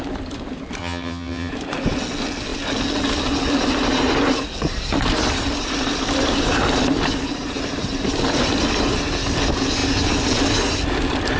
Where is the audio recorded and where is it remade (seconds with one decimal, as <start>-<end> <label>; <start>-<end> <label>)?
0.0-0.8 recorded; 0.8-1.5 remade; 1.5-11.4 recorded